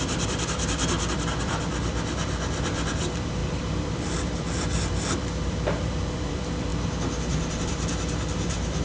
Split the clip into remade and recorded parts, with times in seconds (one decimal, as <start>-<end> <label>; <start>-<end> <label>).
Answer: 0.0-6.7 remade; 6.7-7.6 recorded; 7.6-8.8 remade